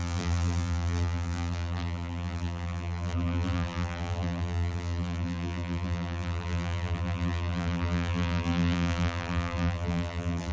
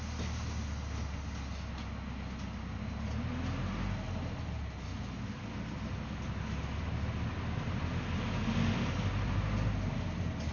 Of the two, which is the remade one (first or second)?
first